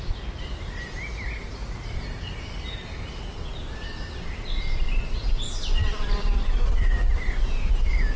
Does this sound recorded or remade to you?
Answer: remade